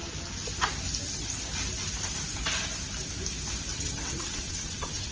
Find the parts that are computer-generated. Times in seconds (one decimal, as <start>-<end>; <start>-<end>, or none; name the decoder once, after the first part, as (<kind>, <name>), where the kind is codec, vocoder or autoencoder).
3.7-5.1 (vocoder, WaveNeXt)